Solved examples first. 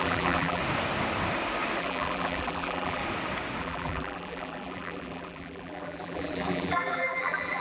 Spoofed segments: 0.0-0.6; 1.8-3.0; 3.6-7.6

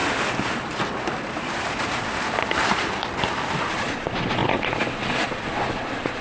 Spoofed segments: 3.7-6.2

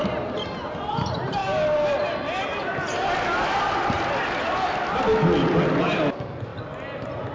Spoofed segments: none

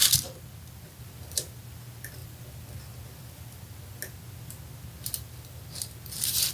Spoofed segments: 0.0-1.0; 2.2-4.0

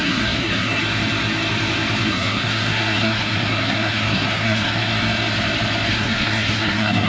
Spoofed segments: 0.0-0.8; 2.1-4.9; 5.9-7.1

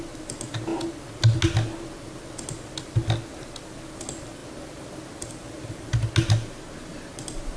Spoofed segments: none